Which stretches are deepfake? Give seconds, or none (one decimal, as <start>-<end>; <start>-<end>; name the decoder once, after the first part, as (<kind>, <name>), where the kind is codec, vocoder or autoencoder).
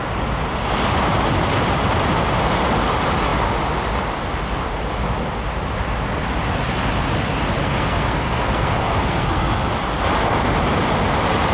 7.6-9.7 (codec, SNAC)